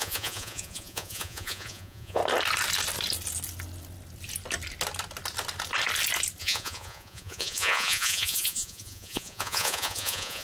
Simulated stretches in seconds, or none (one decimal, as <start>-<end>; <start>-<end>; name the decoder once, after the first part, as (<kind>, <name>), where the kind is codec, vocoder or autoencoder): 0.0-2.2 (vocoder, Vocos); 6.4-10.4